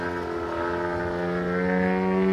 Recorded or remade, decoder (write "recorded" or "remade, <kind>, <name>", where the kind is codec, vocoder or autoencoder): recorded